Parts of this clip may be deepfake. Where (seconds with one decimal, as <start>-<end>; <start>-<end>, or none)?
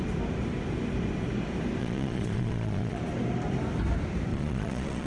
1.8-3.0; 4.3-5.1